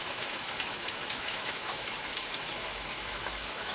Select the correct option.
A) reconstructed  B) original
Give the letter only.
A